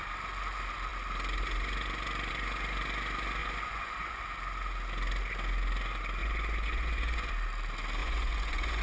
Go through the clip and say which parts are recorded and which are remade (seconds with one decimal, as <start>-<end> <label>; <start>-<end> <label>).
0.0-3.4 recorded; 3.4-4.2 remade; 4.2-6.2 recorded; 6.2-7.3 remade; 7.3-8.0 recorded; 8.0-8.8 remade